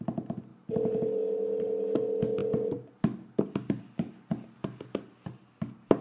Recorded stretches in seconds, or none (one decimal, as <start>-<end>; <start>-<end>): 0.0-6.0